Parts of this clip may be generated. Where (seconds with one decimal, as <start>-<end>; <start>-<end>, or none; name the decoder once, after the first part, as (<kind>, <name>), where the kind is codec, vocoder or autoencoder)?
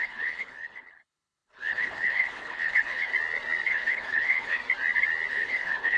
0.0-3.1 (codec, HILCodec); 3.7-4.6; 5.3-6.0